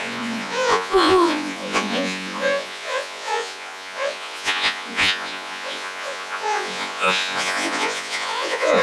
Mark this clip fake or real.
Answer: fake